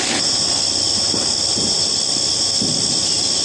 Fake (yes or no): no